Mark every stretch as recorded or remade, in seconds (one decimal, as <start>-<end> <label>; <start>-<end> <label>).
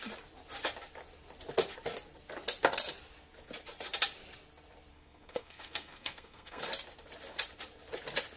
0.0-4.9 recorded; 4.9-6.6 remade; 6.6-8.4 recorded